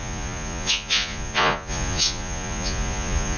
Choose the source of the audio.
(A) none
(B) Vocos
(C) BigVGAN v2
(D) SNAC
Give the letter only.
B